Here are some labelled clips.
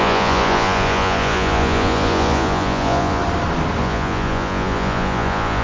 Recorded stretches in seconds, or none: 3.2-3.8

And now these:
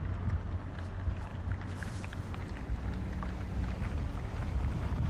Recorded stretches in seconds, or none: 0.0-5.1

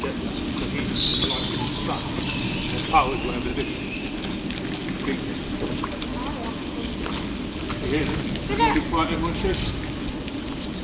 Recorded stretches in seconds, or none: 0.0-3.5; 4.1-10.8

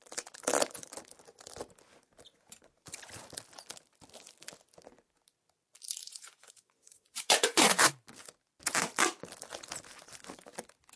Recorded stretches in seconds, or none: 0.0-6.0; 7.9-11.0

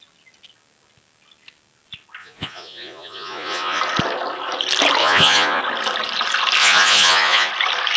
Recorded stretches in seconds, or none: 0.0-2.2; 3.8-5.0; 5.6-6.6; 7.5-8.0

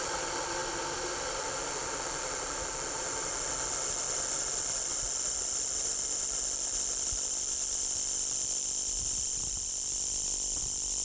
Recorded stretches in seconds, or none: 0.6-1.4